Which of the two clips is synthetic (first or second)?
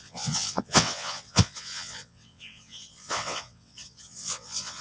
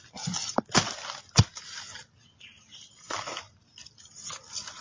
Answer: first